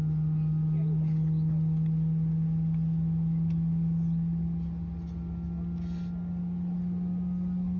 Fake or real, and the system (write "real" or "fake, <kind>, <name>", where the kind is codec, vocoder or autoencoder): real